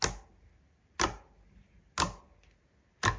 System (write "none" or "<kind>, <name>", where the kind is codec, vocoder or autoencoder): none